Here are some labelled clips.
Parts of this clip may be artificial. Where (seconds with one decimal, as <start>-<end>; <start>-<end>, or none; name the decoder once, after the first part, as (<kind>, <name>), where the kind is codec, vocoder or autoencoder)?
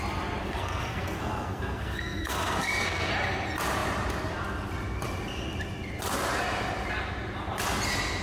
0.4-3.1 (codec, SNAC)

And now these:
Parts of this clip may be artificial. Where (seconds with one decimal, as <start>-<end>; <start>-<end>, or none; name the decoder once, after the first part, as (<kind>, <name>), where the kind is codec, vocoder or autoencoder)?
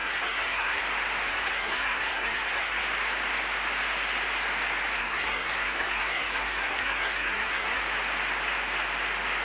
0.0-0.8 (codec, SNAC); 1.3-2.8; 5.0-7.8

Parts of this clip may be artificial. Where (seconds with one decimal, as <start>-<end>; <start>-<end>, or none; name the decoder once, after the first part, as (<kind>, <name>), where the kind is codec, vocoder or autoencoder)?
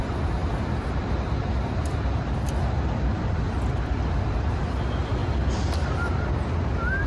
none